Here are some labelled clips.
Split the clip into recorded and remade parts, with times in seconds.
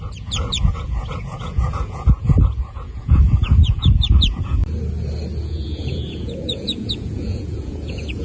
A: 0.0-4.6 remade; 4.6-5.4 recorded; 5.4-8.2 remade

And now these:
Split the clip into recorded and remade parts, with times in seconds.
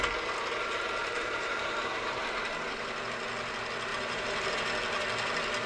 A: 0.0-1.0 recorded; 1.0-2.2 remade; 2.2-3.9 recorded; 3.9-4.5 remade; 4.5-5.7 recorded